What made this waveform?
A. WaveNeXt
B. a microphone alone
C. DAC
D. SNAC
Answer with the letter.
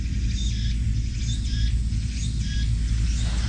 B